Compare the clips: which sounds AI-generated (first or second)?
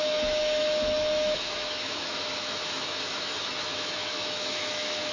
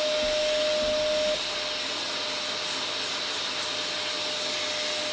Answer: first